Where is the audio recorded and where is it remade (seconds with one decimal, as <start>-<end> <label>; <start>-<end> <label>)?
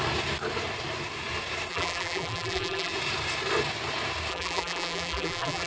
0.0-1.7 recorded; 1.7-2.9 remade; 2.9-4.3 recorded; 4.3-5.7 remade